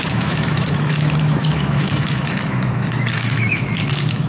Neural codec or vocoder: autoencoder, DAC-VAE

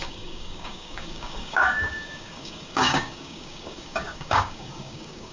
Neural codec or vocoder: codec, DAC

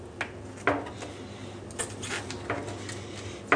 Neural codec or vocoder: none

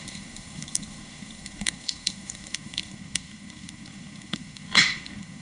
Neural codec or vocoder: codec, SNAC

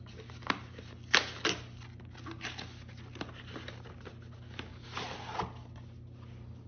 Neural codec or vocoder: none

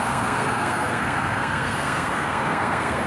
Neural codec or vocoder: codec, SNAC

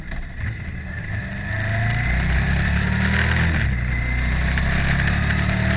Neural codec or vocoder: none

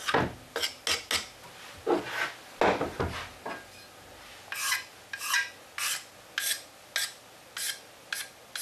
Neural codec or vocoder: none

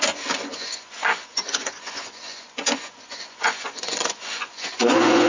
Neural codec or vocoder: vocoder, Vocos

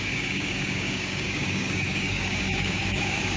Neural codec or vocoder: codec, DAC